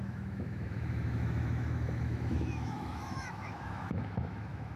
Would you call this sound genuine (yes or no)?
no